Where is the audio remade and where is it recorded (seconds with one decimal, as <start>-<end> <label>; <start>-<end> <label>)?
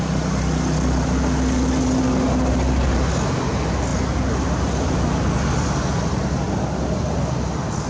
0.0-7.9 recorded